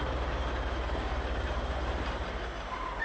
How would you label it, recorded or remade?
recorded